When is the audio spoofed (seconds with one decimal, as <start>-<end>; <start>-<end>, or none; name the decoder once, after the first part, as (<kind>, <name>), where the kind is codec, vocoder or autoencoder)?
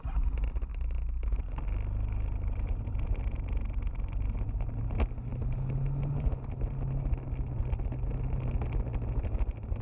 0.7-1.4 (autoencoder, DAC-VAE)